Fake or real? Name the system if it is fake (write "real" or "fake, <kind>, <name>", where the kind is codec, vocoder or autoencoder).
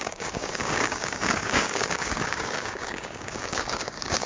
fake, codec, DAC